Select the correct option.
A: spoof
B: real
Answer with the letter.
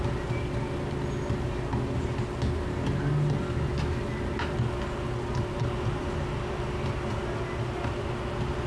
B